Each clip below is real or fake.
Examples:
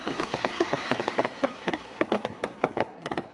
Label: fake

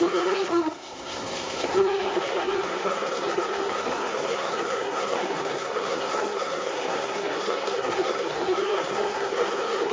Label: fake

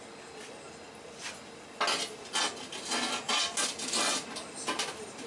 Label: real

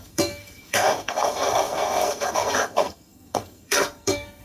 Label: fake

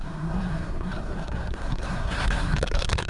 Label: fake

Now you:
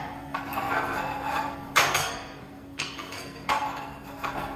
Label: fake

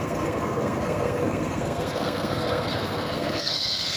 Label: fake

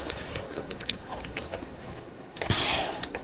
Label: fake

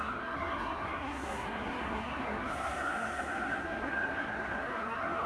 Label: fake